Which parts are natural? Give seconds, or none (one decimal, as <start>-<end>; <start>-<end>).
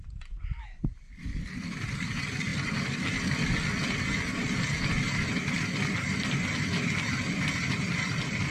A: 0.0-8.5